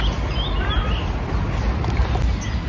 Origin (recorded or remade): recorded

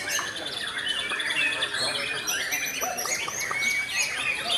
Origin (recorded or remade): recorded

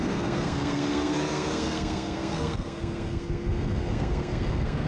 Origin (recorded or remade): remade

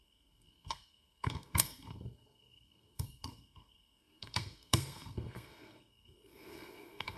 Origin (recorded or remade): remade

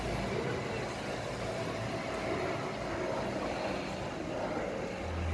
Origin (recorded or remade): recorded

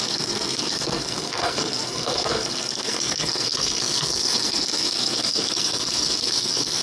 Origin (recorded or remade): remade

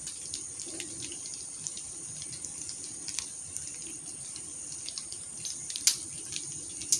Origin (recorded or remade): recorded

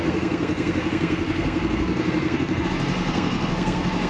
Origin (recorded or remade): remade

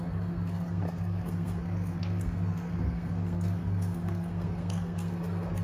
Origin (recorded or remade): remade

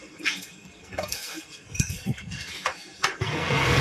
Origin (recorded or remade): remade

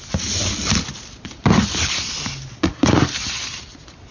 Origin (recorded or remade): recorded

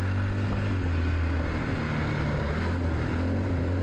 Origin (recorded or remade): recorded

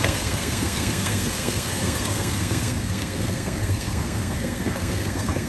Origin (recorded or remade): remade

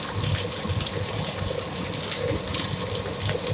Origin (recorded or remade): recorded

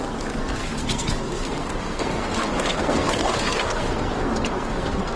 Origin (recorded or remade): remade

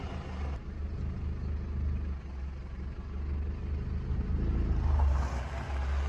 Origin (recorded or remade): recorded